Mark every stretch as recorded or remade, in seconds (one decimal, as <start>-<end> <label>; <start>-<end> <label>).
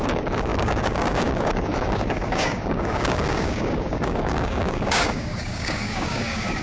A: 0.0-6.6 remade